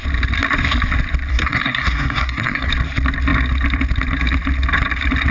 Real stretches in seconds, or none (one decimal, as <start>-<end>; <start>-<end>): 0.0-1.3; 2.7-5.3